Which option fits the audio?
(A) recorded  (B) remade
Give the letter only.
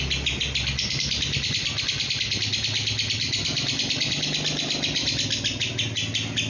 A